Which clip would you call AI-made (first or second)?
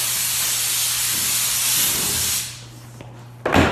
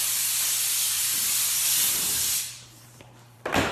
second